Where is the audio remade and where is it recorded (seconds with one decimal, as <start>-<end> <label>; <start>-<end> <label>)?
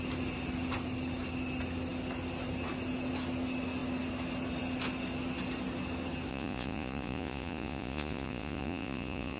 0.0-6.3 recorded; 6.3-9.4 remade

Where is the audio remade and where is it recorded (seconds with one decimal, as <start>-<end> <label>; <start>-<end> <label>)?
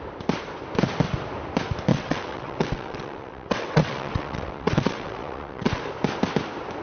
0.0-1.9 recorded; 1.9-5.8 remade; 5.8-6.8 recorded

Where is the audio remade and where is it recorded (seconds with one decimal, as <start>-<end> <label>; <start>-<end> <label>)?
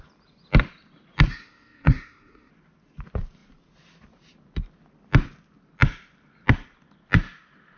0.0-1.3 recorded; 1.3-2.5 remade; 2.5-7.8 recorded